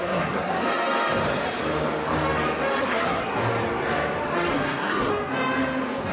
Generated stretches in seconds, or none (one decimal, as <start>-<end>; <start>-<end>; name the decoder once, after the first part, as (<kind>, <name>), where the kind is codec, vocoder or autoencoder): 0.0-0.5 (codec, SNAC); 2.8-3.4; 4.5-5.1